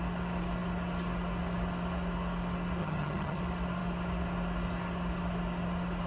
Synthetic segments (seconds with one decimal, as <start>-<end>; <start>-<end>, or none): 2.8-3.4